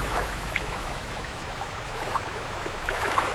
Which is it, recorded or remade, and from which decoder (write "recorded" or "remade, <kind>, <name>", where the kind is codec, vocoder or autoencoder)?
remade, autoencoder, DAC-VAE